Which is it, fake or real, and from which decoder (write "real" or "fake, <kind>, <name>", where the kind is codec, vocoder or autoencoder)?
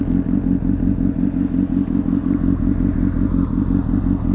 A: real